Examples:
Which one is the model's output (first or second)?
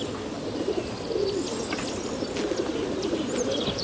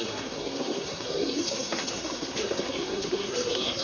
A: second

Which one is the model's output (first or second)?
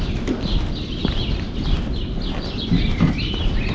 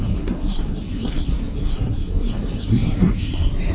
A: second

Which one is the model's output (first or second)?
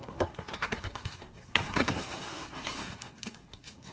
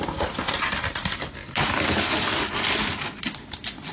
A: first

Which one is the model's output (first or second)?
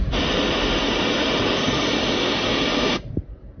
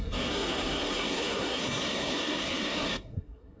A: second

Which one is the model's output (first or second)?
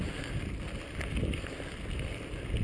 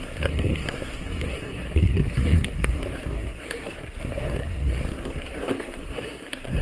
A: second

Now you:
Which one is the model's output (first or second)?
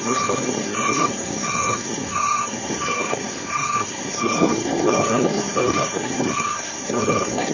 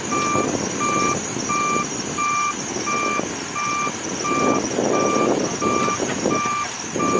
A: first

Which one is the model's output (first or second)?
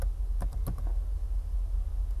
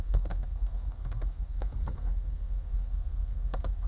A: second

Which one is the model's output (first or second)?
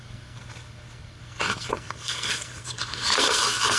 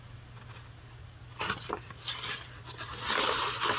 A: first